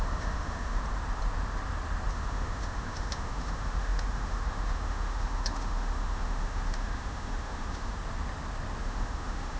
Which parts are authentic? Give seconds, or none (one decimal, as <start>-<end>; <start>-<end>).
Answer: 0.8-2.1; 8.0-8.8